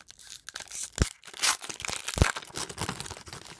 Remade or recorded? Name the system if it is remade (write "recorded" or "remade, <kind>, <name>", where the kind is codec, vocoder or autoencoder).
recorded